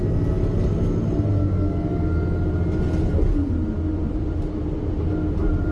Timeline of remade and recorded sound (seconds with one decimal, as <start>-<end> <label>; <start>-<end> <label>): 0.0-1.4 recorded; 1.4-2.1 remade; 2.1-5.7 recorded